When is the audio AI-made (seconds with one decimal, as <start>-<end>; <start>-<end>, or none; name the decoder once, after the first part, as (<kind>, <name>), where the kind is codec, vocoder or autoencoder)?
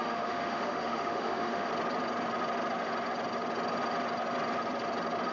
0.0-1.7 (autoencoder, DAC-VAE)